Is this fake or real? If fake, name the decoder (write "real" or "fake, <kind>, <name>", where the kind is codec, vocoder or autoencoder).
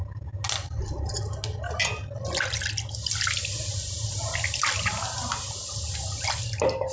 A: real